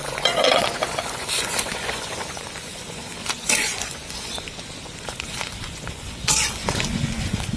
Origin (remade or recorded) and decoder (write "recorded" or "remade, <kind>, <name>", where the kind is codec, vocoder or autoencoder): remade, vocoder, Vocos